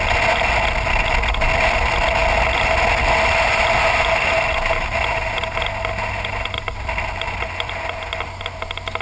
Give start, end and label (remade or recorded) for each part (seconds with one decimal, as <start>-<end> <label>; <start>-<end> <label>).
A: 0.0-9.0 recorded